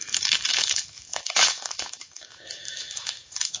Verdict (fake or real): fake